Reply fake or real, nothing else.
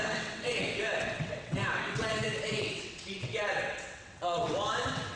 fake